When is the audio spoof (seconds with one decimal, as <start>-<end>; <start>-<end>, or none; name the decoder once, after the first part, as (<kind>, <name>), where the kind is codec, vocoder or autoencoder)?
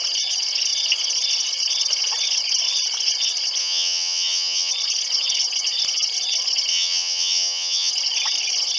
3.6-4.7 (vocoder, HiFi-GAN); 6.7-7.9